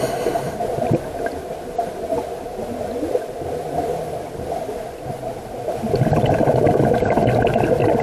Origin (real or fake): real